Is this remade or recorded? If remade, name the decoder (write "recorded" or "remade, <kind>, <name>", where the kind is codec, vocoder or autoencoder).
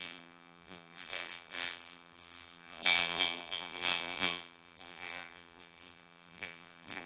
remade, vocoder, BigVGAN v2